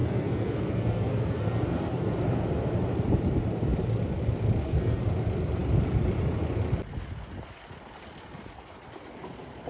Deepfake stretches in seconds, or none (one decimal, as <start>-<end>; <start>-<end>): 0.0-2.1; 4.6-5.1